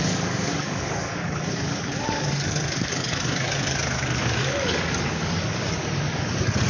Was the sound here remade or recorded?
remade